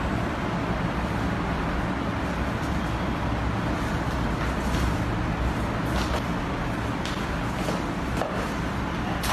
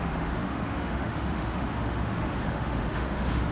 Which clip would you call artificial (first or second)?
second